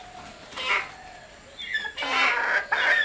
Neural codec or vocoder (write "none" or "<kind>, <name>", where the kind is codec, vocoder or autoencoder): none